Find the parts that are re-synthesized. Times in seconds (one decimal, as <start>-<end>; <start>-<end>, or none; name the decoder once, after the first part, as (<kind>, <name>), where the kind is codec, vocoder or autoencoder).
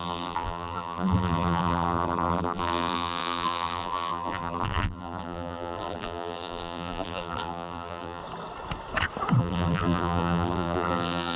0.0-8.2 (vocoder, BigVGAN v2); 9.4-11.4